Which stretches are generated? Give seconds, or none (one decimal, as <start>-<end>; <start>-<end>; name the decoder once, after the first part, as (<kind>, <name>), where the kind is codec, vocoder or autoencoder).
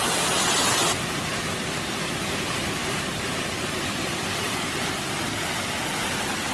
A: none